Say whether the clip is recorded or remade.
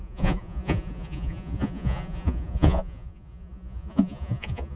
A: remade